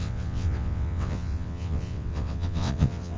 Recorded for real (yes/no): no